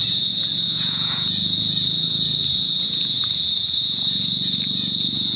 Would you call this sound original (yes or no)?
no